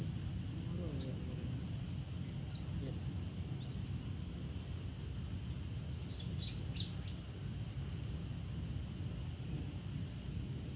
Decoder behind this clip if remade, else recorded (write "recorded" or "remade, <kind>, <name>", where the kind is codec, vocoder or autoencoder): recorded